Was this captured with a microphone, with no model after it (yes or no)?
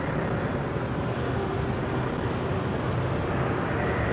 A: yes